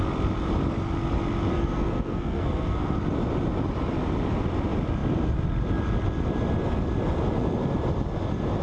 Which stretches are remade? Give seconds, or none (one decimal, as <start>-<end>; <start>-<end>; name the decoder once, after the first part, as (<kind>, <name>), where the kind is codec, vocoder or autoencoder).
1.5-3.0 (codec, SNAC)